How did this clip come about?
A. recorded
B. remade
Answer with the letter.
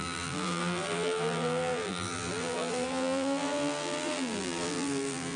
B